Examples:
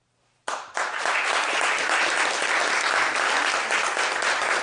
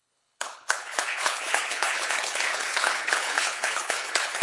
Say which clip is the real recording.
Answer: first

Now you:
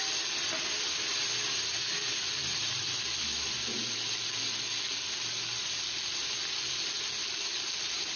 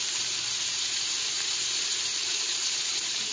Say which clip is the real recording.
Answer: first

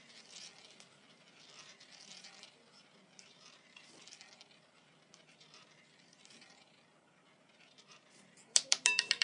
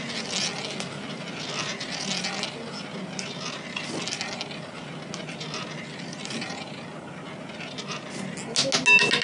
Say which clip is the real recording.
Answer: second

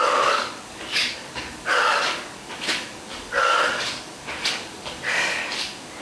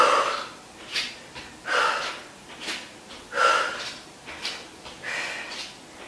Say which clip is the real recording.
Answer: second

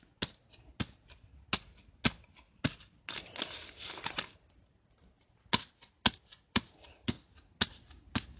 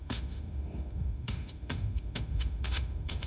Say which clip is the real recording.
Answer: first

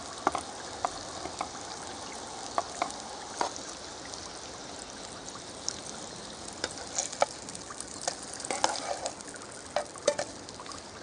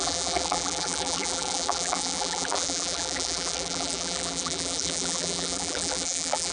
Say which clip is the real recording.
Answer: first